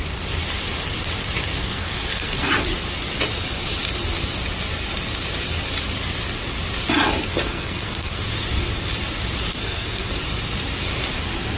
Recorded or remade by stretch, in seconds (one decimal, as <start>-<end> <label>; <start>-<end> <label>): 0.0-1.5 recorded; 1.5-2.5 remade; 2.5-7.3 recorded; 7.3-8.2 remade; 8.2-9.5 recorded; 9.5-10.1 remade; 10.1-11.6 recorded